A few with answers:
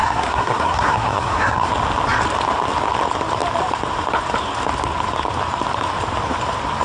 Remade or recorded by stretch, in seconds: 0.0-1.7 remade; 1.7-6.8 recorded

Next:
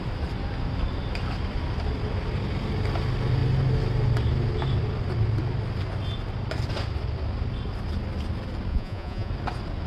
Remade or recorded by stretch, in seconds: 0.0-8.7 recorded; 8.7-9.3 remade; 9.3-9.9 recorded

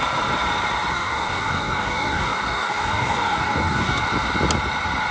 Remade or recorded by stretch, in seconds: 0.0-0.9 recorded; 0.9-4.0 remade; 4.0-5.1 recorded

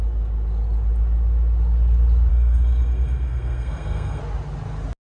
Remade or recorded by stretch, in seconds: 0.0-2.3 recorded; 2.3-4.2 remade; 4.2-5.0 recorded

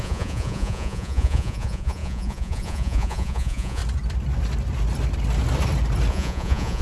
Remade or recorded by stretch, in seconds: 0.0-3.8 remade; 3.8-6.1 recorded; 6.1-6.8 remade